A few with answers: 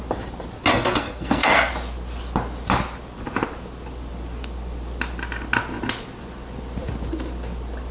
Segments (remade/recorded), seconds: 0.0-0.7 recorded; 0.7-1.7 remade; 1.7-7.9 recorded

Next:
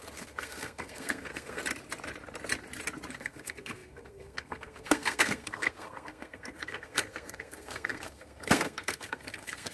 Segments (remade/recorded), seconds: 0.0-1.6 remade; 1.6-3.1 recorded; 3.1-9.7 remade

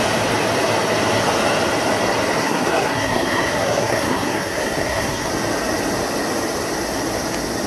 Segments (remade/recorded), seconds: 0.0-2.4 recorded; 2.4-5.3 remade; 5.3-7.7 recorded

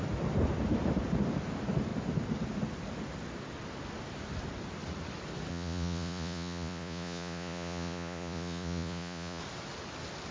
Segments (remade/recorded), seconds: 0.0-5.5 recorded; 5.5-9.4 remade; 9.4-10.3 recorded

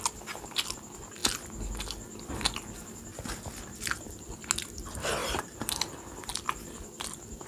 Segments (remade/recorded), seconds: 0.0-7.5 recorded

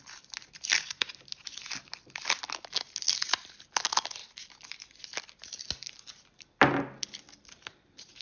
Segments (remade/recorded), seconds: 0.0-8.2 recorded

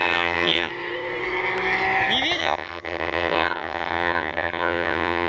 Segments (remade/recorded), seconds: 0.0-0.7 remade; 0.7-2.4 recorded; 2.4-5.3 remade